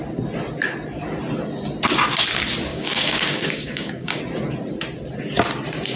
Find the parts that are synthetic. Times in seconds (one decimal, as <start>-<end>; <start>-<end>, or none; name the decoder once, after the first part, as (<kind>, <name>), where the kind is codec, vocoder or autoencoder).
2.7-4.2 (codec, DAC)

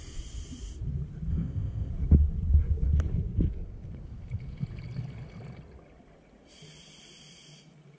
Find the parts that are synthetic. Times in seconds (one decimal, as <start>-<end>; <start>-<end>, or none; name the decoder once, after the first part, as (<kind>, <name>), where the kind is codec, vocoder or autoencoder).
1.3-1.9 (codec, ZipCodec)

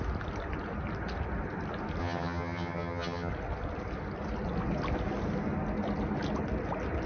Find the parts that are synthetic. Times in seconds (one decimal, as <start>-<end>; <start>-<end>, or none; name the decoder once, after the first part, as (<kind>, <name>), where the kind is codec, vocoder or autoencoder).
2.0-3.3 (vocoder, HiFi-GAN)

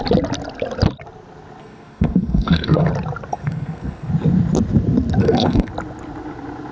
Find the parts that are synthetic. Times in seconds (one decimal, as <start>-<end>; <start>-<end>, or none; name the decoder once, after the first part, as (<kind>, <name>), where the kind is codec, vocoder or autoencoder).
1.6-2.9 (codec, SNAC); 3.3-4.1; 5.2-5.7

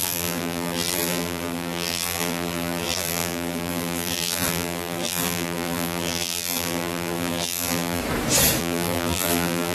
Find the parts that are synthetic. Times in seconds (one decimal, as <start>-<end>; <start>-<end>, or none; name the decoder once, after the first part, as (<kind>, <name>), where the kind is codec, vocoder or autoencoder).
0.0-8.0 (vocoder, BigVGAN v2); 8.6-9.7

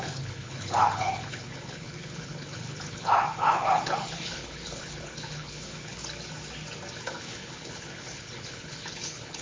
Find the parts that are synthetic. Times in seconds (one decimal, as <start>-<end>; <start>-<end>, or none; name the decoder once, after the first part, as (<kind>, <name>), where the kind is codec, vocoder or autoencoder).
0.0-6.0 (codec, HILCodec); 7.0-9.4

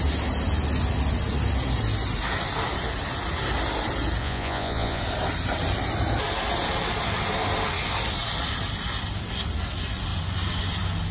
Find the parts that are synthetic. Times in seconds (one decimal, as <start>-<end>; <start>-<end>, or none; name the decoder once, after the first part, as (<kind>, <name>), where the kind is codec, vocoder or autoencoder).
4.2-5.0 (vocoder, Vocos)

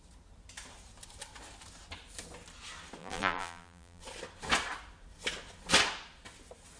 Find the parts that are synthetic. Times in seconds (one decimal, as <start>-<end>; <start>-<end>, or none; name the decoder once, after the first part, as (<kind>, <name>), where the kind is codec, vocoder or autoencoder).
3.0-4.0 (vocoder, BigVGAN v2)